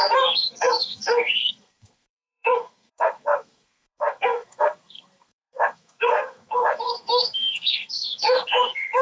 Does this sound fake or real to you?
fake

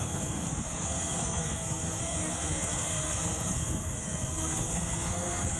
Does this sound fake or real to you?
fake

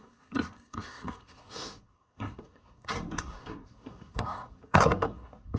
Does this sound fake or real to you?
fake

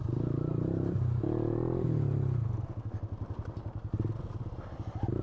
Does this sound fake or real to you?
real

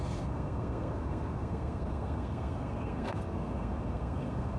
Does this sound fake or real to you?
fake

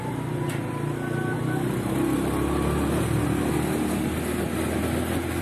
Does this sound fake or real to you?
real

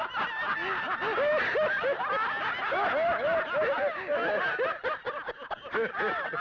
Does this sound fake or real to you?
real